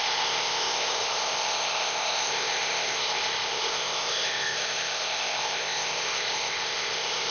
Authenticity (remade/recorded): remade